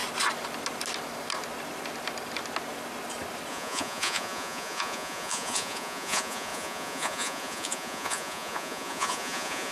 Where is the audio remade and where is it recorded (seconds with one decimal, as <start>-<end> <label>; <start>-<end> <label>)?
0.0-3.5 recorded; 3.5-9.7 remade